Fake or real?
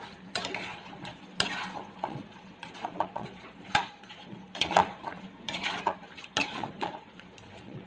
fake